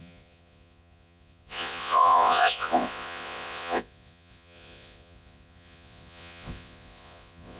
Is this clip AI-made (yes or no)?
yes